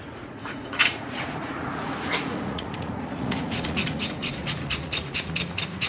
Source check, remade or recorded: remade